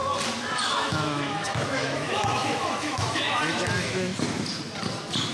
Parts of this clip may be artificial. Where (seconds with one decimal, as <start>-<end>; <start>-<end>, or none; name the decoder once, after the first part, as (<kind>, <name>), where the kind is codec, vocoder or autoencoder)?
0.6-4.1 (autoencoder, DAC-VAE)